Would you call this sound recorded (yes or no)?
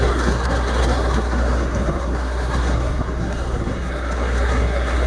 no